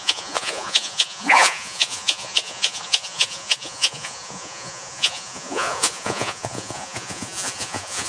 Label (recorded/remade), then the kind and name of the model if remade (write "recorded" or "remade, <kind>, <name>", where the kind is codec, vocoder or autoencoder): remade, vocoder, Vocos